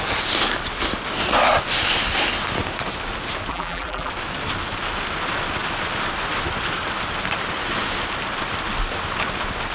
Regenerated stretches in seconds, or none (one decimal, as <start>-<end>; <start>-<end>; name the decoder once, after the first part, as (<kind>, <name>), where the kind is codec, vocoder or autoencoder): 3.5-4.1 (vocoder, BigVGAN v2)